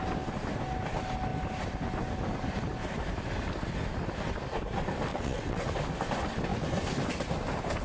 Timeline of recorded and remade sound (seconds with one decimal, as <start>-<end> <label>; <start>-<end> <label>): 0.0-5.1 recorded; 5.1-5.7 remade; 5.7-7.8 recorded